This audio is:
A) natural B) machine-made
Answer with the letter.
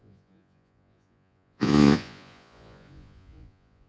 B